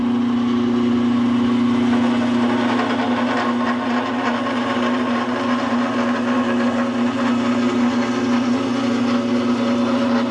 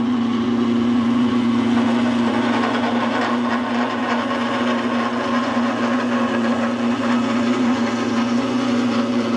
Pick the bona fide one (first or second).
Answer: first